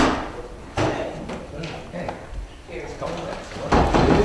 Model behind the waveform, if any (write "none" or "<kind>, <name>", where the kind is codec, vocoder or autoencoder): none